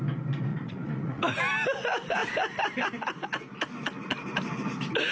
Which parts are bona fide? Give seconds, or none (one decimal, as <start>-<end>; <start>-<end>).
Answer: 0.0-0.5; 1.2-5.1